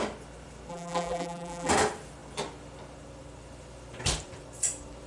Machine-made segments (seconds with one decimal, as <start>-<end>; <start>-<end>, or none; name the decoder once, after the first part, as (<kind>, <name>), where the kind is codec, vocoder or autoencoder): 0.7-1.7 (vocoder, BigVGAN v2)